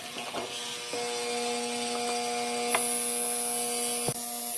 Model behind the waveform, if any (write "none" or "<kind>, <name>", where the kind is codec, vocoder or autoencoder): none